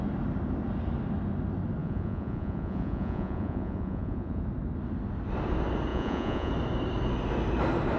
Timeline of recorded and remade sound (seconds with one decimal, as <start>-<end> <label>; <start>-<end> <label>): 0.0-1.8 recorded; 1.8-4.4 remade; 4.4-5.9 recorded; 5.9-6.5 remade; 6.5-8.0 recorded